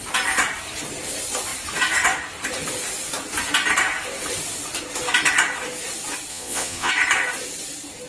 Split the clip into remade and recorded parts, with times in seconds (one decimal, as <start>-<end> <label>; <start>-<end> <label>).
0.0-6.3 recorded; 6.3-6.9 remade; 6.9-8.1 recorded